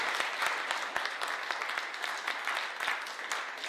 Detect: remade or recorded recorded